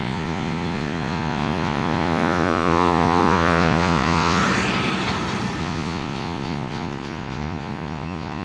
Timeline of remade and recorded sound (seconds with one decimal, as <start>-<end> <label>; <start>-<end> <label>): 0.0-4.4 remade; 4.4-5.6 recorded; 5.6-8.4 remade

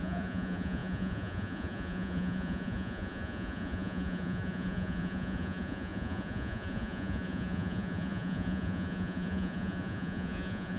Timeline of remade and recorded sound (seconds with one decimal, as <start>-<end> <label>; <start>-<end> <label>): 0.0-10.8 remade

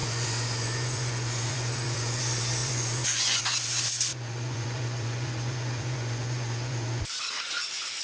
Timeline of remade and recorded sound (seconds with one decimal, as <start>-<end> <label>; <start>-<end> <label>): 0.0-2.2 remade; 2.2-2.6 recorded; 2.6-3.4 remade; 3.4-4.1 recorded; 4.1-7.0 remade; 7.0-8.0 recorded

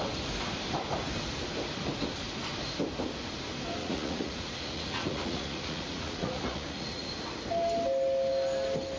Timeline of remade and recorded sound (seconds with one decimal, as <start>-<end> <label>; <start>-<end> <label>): 0.0-3.8 recorded; 3.8-7.1 remade; 7.1-9.0 recorded